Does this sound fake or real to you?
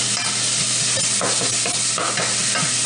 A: real